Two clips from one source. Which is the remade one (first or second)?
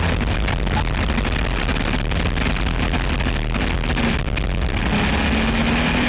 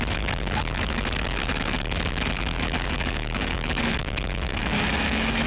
second